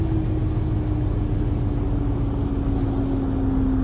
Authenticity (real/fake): real